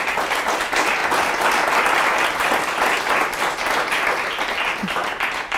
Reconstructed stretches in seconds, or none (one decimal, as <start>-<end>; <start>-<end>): none